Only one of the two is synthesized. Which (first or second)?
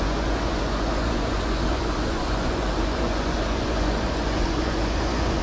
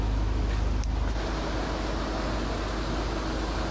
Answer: first